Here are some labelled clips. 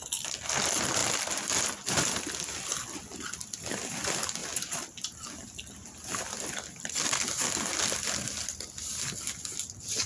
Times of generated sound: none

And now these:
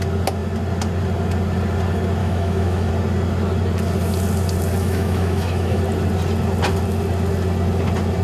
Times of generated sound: 2.2-2.9 (autoencoder, DAC-VAE); 4.8-5.8

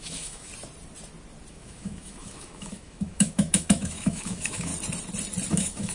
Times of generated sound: 0.0-0.5 (autoencoder, DAC-VAE); 1.5-4.7; 5.5-5.9